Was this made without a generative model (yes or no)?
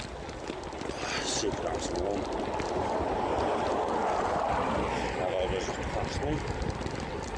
yes